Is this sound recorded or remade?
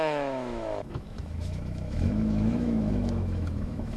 remade